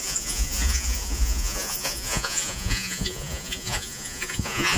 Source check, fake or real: fake